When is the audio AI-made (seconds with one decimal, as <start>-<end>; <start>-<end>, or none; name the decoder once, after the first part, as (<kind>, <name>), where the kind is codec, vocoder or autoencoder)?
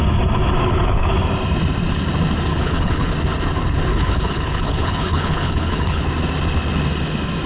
0.6-1.1 (codec, HILCodec); 2.5-3.1; 3.9-6.0